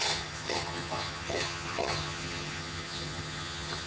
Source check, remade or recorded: remade